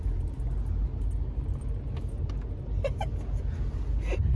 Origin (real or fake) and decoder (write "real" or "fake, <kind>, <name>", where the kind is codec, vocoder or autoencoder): real